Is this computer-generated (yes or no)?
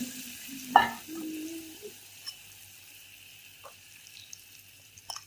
yes